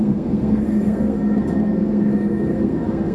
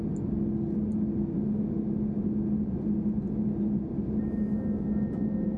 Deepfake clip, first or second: first